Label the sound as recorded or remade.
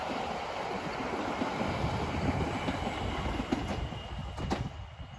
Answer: recorded